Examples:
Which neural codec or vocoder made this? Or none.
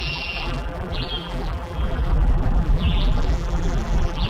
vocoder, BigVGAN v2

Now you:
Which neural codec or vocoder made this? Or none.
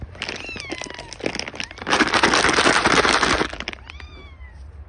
none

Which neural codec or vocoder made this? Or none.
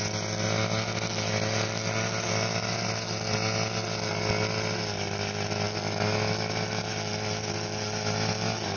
none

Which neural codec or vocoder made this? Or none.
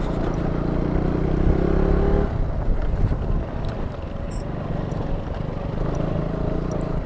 none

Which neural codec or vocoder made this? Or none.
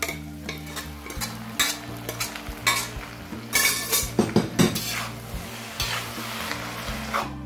none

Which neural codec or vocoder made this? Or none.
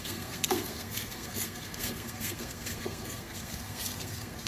codec, SNAC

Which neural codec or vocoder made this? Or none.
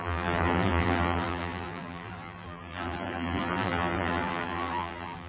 vocoder, BigVGAN v2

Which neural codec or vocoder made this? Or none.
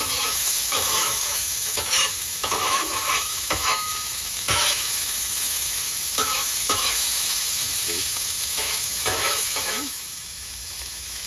autoencoder, DAC-VAE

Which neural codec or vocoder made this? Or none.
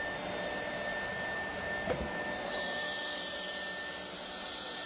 none